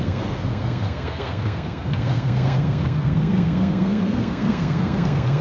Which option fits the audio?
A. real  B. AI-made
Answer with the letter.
B